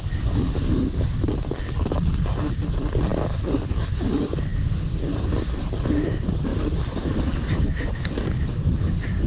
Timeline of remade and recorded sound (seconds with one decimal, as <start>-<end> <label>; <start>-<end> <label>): 0.0-9.3 recorded